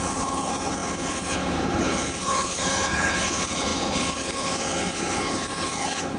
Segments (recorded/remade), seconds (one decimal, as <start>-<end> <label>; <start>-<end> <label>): 0.0-6.2 remade